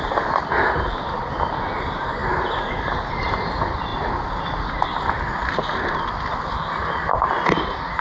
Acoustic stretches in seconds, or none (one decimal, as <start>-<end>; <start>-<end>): 0.0-8.0